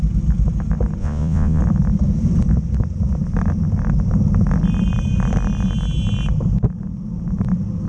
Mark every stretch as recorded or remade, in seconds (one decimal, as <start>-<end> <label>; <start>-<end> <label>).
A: 0.0-1.0 recorded; 1.0-1.6 remade; 1.6-7.9 recorded